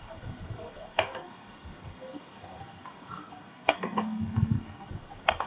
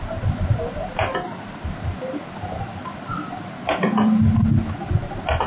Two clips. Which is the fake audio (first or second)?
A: first